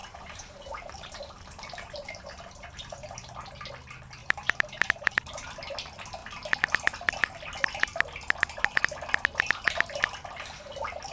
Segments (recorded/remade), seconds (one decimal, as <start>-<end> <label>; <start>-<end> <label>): 0.0-3.7 remade; 3.7-4.2 recorded; 4.2-5.5 remade; 5.5-11.1 recorded